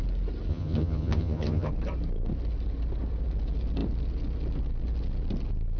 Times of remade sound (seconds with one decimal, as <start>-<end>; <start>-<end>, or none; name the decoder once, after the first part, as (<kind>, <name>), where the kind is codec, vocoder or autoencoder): 0.5-1.7 (vocoder, HiFi-GAN)